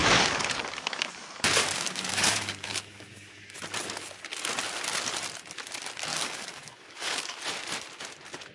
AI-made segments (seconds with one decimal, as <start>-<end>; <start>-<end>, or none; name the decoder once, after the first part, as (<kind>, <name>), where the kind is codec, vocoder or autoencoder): 0.0-3.6 (codec, DAC); 6.1-7.4